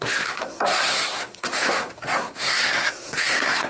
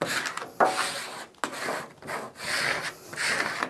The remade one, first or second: first